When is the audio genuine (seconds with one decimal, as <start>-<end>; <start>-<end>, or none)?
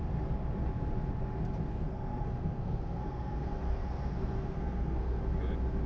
0.0-1.7; 5.2-5.9